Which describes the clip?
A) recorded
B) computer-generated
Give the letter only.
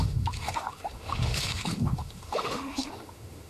B